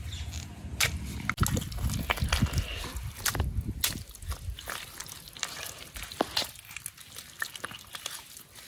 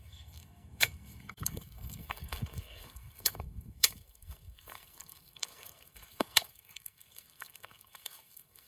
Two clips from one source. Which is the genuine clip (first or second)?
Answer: first